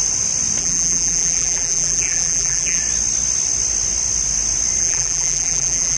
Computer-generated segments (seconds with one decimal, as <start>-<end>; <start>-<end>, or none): 0.6-2.8; 4.8-6.0